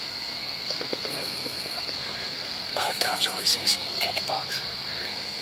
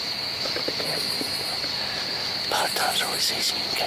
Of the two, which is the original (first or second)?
second